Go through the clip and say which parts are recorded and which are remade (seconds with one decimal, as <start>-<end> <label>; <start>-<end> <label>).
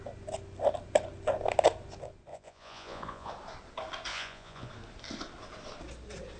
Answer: 0.0-2.3 recorded; 2.3-3.3 remade; 3.3-4.1 recorded; 4.1-4.7 remade; 4.7-6.4 recorded